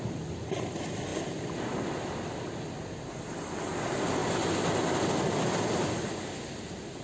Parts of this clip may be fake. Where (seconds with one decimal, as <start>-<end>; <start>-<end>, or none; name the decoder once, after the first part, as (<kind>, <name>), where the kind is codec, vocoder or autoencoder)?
none